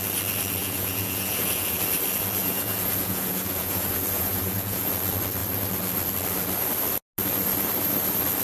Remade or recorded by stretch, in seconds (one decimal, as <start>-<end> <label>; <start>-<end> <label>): 0.0-0.6 recorded; 0.6-1.8 remade; 1.8-2.4 recorded; 2.4-4.9 remade; 4.9-8.4 recorded